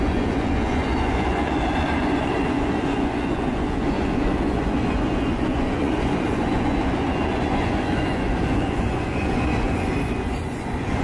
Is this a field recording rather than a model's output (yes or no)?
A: no